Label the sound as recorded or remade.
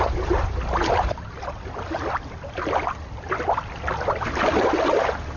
recorded